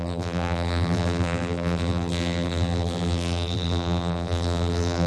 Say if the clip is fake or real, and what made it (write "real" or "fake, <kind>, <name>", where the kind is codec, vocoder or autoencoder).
fake, vocoder, BigVGAN v2